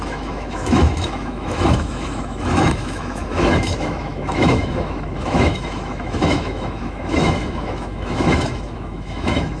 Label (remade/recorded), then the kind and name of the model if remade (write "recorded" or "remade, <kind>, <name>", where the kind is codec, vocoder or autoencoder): remade, autoencoder, DAC-VAE